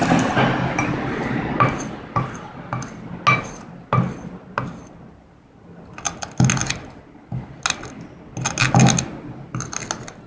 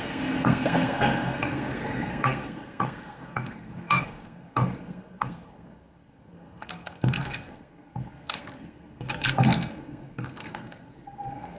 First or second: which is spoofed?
second